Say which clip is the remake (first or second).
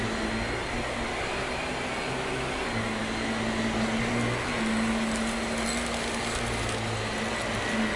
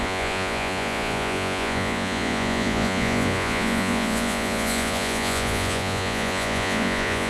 second